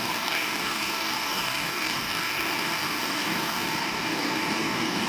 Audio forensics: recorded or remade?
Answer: remade